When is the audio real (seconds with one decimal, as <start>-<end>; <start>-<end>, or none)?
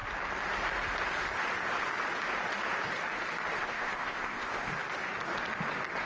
0.0-3.6; 4.7-6.0